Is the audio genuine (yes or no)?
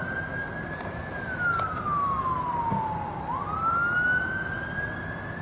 yes